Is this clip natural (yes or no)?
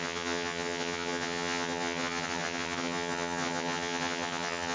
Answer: no